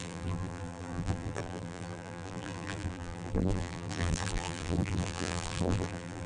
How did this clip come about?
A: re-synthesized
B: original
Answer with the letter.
A